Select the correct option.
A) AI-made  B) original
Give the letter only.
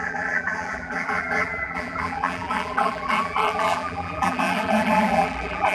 A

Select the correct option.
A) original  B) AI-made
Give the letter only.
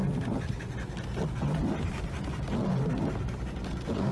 A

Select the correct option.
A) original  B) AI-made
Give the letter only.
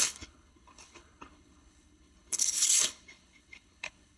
B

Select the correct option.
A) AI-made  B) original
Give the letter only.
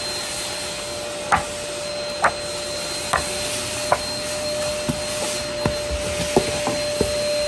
B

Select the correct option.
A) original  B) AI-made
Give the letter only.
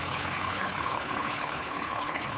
B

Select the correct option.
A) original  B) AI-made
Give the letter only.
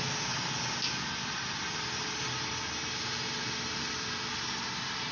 A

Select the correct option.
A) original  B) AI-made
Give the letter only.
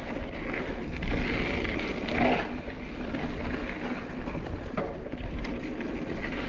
A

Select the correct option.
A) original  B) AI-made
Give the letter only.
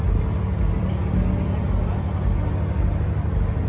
A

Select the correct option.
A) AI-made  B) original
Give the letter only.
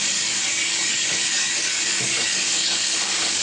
A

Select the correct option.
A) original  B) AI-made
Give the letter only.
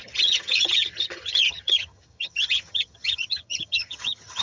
B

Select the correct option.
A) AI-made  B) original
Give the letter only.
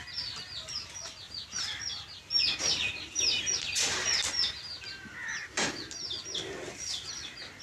B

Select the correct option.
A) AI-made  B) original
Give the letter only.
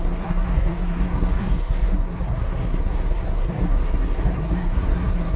A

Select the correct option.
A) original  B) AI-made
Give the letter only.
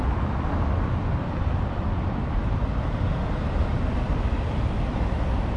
A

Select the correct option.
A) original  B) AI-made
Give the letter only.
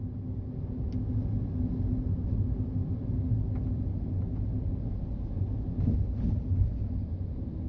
A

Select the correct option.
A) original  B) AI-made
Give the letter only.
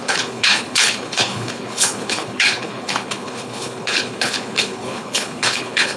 B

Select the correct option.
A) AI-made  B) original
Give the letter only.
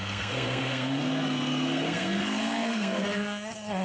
A